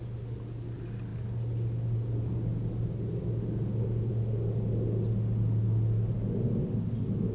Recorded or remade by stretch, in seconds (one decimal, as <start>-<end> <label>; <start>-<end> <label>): 0.0-7.3 recorded